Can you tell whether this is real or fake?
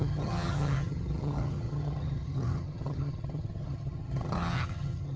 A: fake